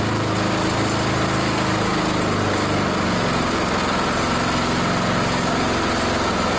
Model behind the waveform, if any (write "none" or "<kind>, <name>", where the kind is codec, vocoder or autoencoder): none